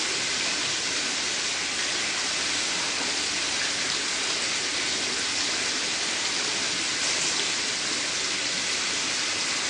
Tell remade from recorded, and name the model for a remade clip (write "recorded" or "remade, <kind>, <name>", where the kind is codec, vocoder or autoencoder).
recorded